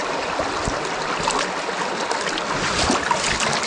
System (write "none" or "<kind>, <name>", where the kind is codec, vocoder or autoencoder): none